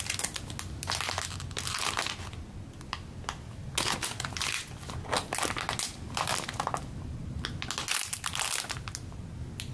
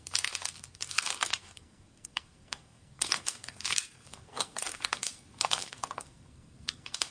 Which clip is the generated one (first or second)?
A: second